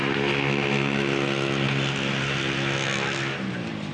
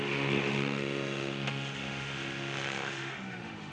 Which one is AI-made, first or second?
second